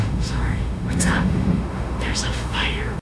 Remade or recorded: remade